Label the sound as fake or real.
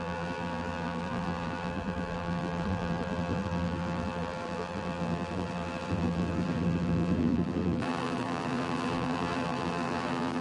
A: fake